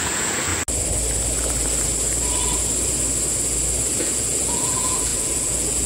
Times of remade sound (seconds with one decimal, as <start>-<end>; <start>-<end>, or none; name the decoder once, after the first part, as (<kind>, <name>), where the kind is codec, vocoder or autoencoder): 0.0-0.5 (vocoder, Vocos); 4.0-5.9